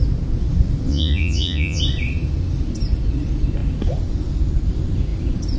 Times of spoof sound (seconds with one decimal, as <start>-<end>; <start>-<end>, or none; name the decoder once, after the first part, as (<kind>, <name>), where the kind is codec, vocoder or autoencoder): 0.9-1.8 (vocoder, Vocos)